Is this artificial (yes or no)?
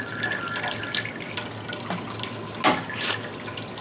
no